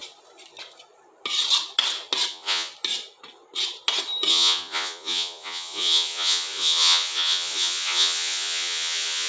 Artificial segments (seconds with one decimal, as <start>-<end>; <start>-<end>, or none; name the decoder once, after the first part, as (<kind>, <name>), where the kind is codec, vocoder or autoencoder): 2.3-2.7 (vocoder, Vocos); 4.3-9.3